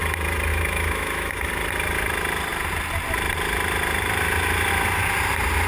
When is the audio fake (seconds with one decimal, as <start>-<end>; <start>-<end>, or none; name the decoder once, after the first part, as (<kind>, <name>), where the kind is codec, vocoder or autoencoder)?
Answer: 0.5-1.5 (autoencoder, DAC-VAE)